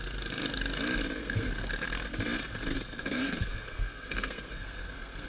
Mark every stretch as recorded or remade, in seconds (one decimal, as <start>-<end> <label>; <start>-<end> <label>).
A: 0.0-1.2 recorded; 1.2-1.7 remade; 1.7-2.7 recorded; 2.7-5.3 remade